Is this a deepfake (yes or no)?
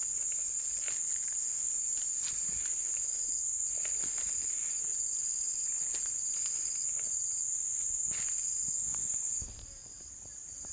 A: no